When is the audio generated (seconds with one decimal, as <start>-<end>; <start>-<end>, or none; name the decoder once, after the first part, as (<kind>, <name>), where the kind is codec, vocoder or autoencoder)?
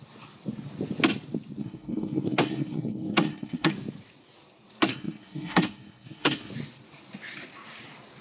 1.6-3.7 (codec, SNAC); 4.9-6.5